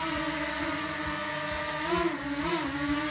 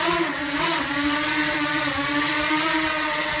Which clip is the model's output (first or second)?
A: second